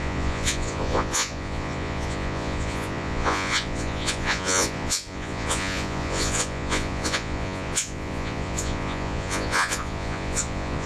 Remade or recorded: remade